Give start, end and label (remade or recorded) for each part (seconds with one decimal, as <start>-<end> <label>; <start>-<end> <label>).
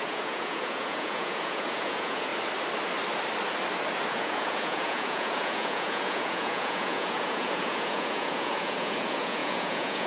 0.0-2.3 remade; 2.3-4.1 recorded; 4.1-10.1 remade